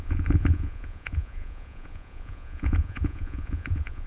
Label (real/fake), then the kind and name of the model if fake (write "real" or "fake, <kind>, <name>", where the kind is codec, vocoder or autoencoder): fake, vocoder, Vocos